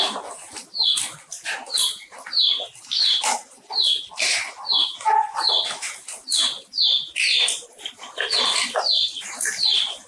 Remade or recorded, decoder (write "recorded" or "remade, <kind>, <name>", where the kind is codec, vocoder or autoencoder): recorded